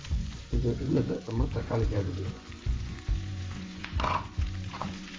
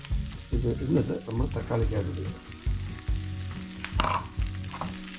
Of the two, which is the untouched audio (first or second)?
second